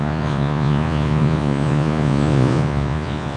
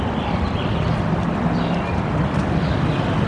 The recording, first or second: second